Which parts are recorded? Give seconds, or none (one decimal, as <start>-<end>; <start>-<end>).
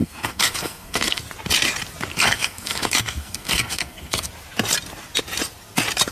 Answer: 1.2-2.1; 4.3-6.1